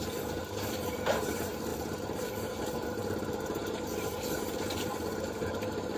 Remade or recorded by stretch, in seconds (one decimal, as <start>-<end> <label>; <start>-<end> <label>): 0.0-6.0 remade